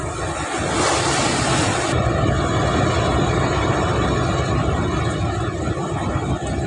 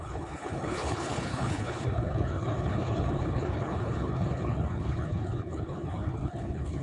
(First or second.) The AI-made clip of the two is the second